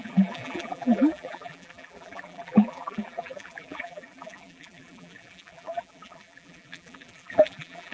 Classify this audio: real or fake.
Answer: fake